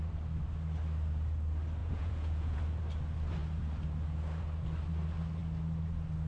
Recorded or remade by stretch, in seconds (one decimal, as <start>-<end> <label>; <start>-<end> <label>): 0.0-1.8 recorded; 1.8-2.6 remade; 2.6-6.3 recorded